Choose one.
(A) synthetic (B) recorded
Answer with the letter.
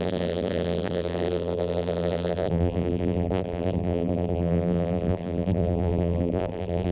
A